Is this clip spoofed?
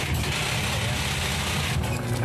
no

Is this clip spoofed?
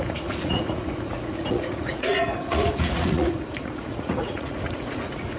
yes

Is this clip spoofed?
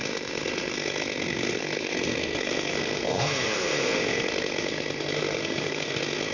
yes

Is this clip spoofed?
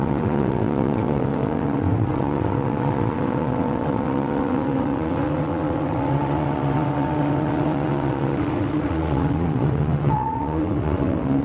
yes